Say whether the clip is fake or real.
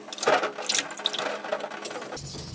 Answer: real